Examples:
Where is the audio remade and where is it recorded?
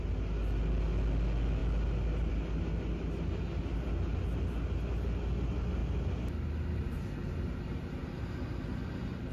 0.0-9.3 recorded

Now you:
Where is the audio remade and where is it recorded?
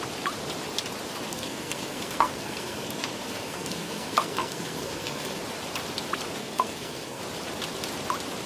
0.0-1.3 recorded; 1.3-5.4 remade; 5.4-6.4 recorded; 6.4-7.2 remade; 7.2-8.5 recorded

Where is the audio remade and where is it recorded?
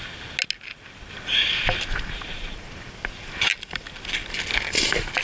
0.0-5.2 recorded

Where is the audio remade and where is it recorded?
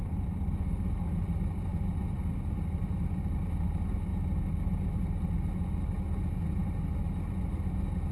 0.0-8.1 recorded